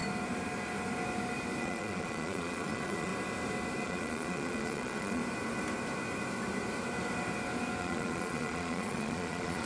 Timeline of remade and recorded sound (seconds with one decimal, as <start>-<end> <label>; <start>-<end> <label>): 0.0-1.6 recorded; 1.6-3.1 remade; 3.1-3.8 recorded; 3.8-5.2 remade; 5.2-7.8 recorded; 7.8-9.7 remade